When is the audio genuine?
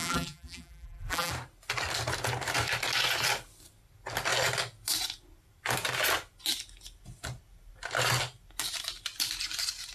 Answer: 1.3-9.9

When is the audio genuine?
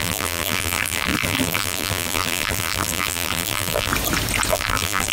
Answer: 3.9-4.5